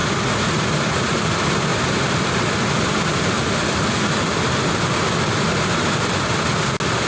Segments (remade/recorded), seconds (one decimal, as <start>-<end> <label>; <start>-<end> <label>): 0.0-0.6 remade; 0.6-1.7 recorded; 1.7-3.2 remade; 3.2-7.1 recorded